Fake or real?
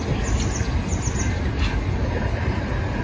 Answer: real